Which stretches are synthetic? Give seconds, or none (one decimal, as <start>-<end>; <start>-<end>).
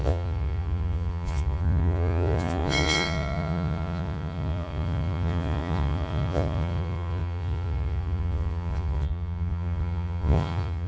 0.0-10.9